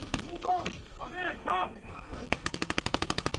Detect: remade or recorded remade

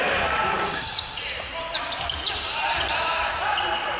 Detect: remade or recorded recorded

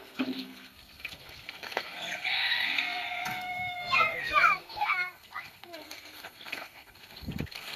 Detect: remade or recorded remade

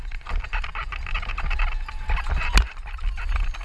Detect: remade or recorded recorded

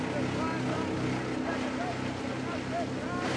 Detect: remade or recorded recorded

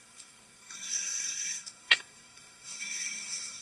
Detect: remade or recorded remade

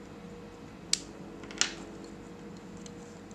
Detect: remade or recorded recorded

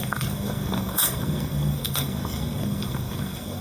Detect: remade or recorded remade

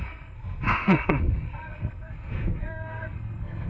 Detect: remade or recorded remade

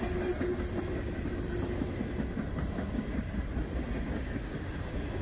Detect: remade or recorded recorded